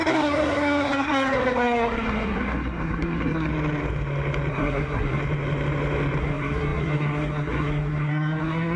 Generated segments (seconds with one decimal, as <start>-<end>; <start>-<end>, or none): 0.0-3.5; 4.5-5.2; 6.2-8.8